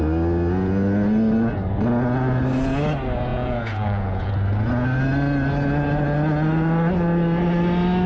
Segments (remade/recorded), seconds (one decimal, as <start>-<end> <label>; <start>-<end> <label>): 0.0-3.3 recorded; 3.3-4.3 remade; 4.3-8.1 recorded